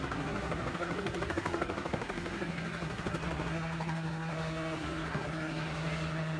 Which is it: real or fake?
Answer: fake